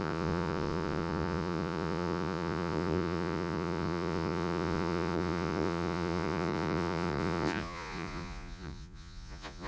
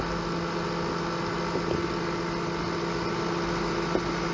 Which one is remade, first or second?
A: first